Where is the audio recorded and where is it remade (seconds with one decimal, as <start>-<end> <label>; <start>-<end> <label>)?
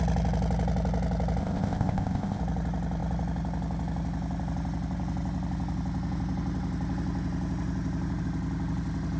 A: 0.0-1.4 recorded; 1.4-2.4 remade; 2.4-9.2 recorded